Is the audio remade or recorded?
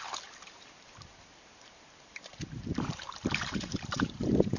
remade